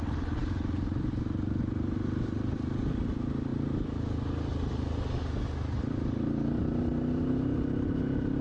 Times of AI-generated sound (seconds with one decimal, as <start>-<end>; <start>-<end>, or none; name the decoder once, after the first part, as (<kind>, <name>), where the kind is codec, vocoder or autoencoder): none